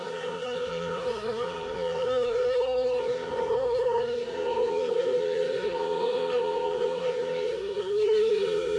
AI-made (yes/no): yes